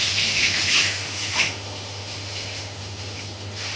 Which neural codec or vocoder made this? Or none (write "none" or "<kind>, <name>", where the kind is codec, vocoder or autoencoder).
autoencoder, DAC-VAE